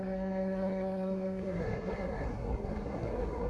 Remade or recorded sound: remade